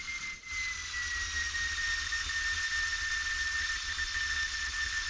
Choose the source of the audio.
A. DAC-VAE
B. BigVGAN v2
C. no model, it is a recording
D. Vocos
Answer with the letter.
C